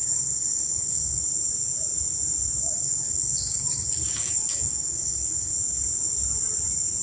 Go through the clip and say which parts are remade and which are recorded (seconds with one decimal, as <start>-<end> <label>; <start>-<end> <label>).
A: 0.0-1.2 remade; 1.2-2.6 recorded; 2.6-5.5 remade; 5.5-7.0 recorded